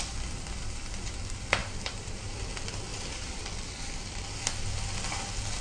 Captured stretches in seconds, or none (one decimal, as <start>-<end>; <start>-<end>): 0.0-1.6; 2.4-2.9; 3.4-5.6